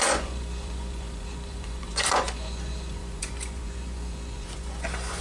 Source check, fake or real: fake